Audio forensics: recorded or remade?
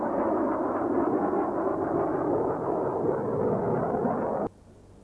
recorded